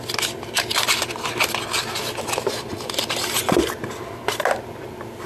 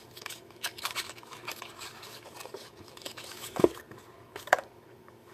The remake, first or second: second